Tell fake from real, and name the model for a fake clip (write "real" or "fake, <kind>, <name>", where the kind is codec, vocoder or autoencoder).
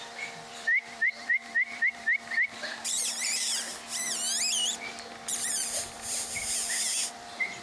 fake, vocoder, BigVGAN v2